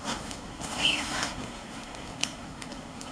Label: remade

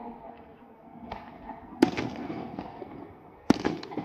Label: remade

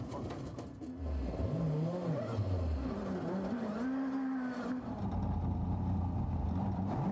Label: recorded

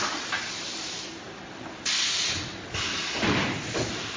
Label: recorded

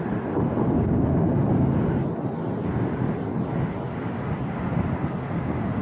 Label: recorded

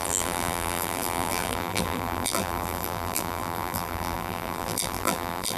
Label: remade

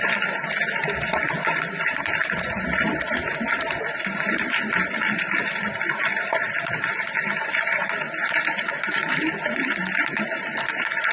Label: remade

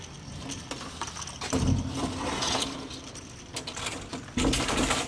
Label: recorded